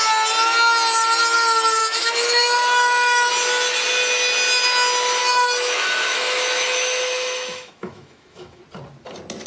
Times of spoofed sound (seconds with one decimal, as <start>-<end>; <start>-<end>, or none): 1.8-3.3; 5.2-8.6